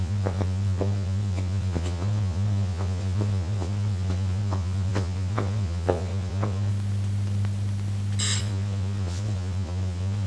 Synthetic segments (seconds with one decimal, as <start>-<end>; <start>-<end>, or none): 0.0-6.7; 8.4-10.3